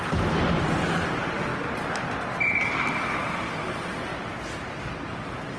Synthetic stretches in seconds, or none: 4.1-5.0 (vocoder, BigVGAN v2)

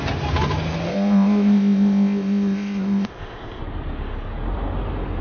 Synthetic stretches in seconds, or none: 0.9-3.6 (codec, ZipCodec)

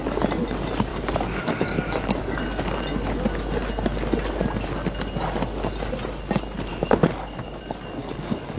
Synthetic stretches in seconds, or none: 0.9-2.2 (codec, DAC); 6.7-7.6; 8.0-8.6

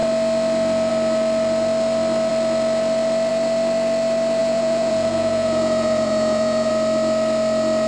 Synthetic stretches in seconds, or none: 4.4-6.7 (vocoder, Vocos)